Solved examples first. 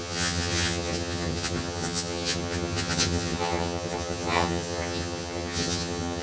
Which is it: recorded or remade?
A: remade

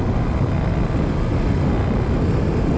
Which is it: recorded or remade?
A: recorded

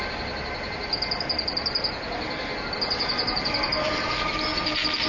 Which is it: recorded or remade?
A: recorded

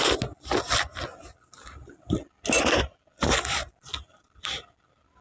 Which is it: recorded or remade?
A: recorded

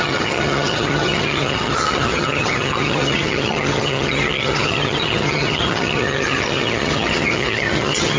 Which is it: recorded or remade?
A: remade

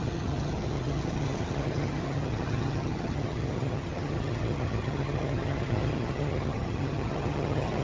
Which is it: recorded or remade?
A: remade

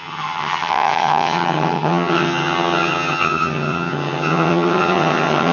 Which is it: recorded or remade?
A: remade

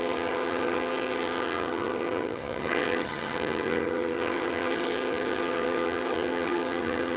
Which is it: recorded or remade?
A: remade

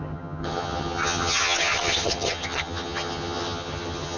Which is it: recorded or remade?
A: remade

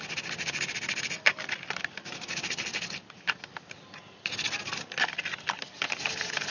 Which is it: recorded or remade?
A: recorded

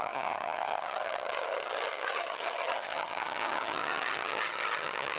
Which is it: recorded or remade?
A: remade